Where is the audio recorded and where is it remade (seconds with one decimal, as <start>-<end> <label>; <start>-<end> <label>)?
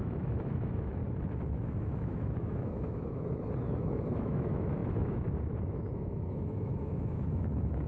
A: 0.0-1.0 remade; 1.0-1.5 recorded; 1.5-7.9 remade